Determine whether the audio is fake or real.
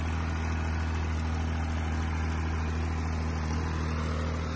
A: real